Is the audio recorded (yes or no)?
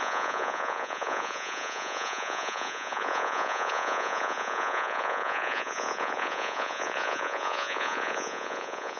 no